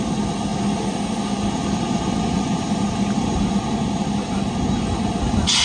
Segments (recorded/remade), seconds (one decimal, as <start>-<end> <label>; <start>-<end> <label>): 0.0-5.6 recorded